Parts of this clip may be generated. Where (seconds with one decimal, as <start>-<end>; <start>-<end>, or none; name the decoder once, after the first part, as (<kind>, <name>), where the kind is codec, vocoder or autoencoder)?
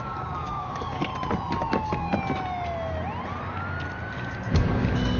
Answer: 0.0-1.1 (codec, DAC); 1.7-2.1; 4.7-5.2